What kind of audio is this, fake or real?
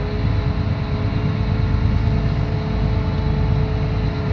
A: real